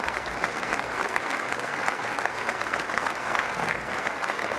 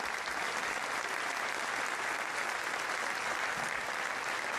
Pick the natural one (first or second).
second